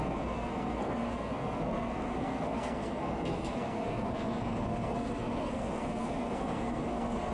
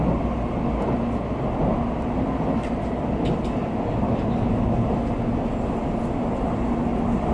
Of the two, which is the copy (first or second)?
first